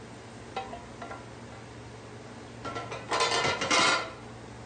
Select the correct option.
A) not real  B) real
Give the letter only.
B